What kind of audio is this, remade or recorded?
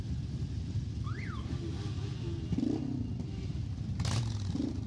recorded